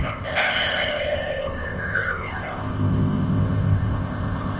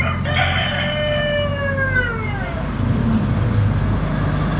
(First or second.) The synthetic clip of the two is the first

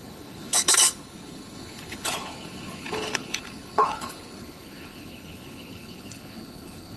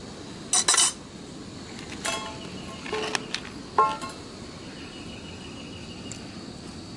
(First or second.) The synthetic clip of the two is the first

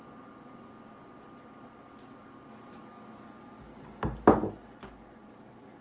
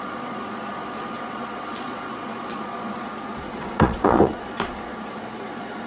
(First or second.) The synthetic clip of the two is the second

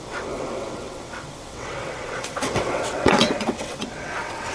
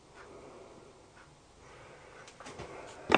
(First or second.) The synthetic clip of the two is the first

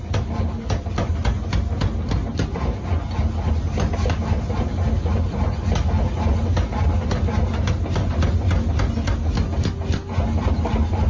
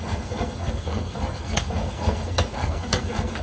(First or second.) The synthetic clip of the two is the second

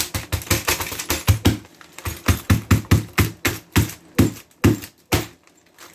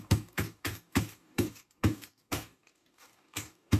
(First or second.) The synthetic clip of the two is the second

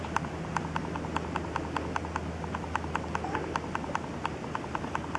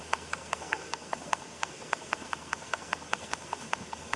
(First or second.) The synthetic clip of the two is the second